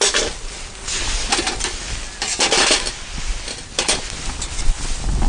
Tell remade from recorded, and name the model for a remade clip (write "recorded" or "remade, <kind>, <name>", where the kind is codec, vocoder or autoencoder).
recorded